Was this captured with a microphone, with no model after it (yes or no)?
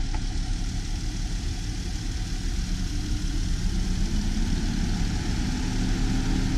yes